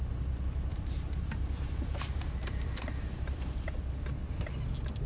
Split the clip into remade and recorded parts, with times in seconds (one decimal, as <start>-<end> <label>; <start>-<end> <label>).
0.0-0.7 recorded; 0.7-3.8 remade; 3.8-5.1 recorded